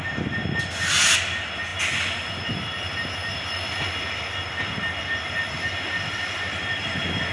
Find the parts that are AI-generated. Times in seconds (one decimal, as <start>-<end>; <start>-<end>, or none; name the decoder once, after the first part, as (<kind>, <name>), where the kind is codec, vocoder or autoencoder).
none